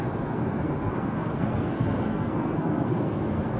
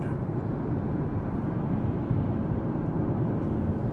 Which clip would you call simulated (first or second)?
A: first